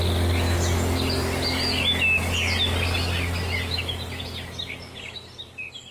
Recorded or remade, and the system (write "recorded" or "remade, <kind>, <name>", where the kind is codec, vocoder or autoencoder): recorded